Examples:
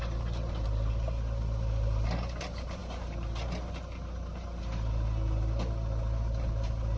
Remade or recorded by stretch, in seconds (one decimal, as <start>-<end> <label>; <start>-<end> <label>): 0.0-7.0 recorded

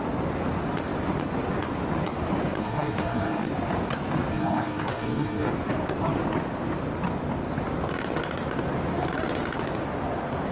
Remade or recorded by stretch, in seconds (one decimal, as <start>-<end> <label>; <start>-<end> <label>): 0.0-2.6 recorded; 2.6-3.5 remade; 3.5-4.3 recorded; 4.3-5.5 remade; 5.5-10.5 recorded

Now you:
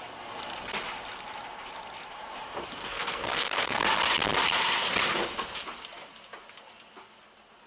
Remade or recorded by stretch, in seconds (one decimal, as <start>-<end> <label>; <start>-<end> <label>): 0.0-2.8 recorded; 2.8-3.8 remade; 3.8-7.7 recorded

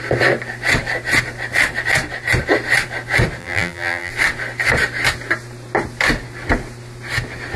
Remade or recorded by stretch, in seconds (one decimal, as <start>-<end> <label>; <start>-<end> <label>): 0.0-3.4 recorded; 3.4-4.1 remade; 4.1-7.6 recorded

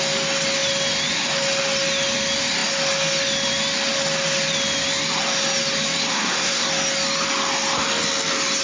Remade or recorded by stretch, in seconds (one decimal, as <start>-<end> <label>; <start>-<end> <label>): 0.0-6.1 recorded; 6.1-6.7 remade; 6.7-8.6 recorded